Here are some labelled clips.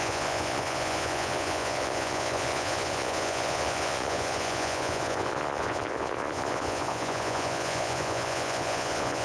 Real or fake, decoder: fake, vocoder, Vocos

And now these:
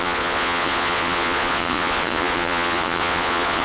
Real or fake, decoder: fake, vocoder, Vocos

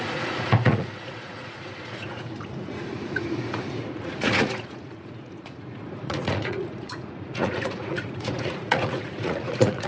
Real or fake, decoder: fake, vocoder, Vocos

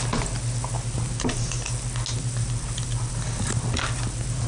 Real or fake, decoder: real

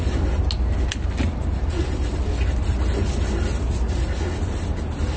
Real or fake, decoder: real